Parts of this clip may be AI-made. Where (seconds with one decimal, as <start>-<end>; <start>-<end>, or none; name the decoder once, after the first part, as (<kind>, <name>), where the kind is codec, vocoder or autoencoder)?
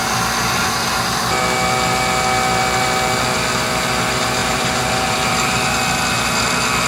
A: 4.4-5.6 (vocoder, BigVGAN v2)